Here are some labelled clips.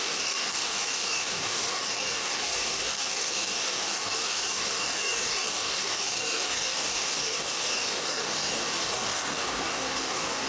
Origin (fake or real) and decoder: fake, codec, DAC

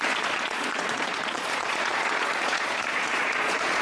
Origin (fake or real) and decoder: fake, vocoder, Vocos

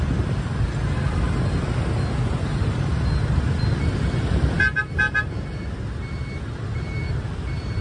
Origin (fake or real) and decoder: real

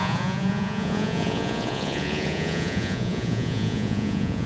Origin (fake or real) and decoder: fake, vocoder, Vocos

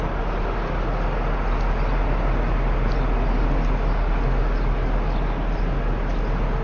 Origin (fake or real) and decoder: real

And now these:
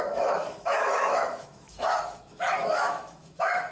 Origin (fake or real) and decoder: fake, autoencoder, DAC-VAE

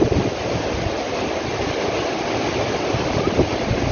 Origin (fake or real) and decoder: real